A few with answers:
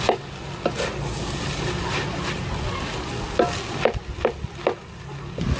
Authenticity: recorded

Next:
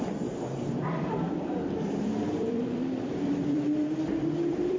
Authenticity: remade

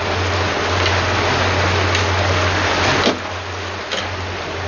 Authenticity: recorded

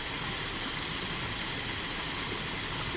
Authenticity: recorded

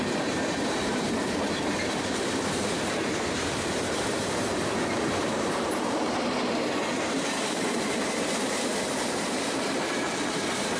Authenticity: remade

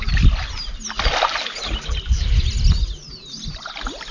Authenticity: recorded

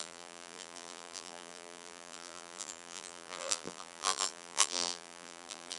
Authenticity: remade